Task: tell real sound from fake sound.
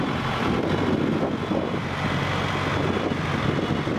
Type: real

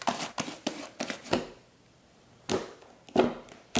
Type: real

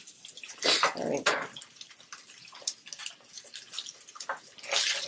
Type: real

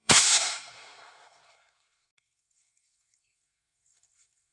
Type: fake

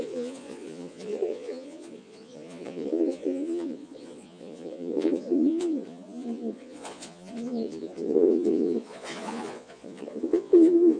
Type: fake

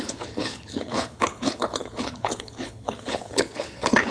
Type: fake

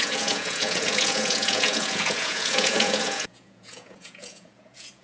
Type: fake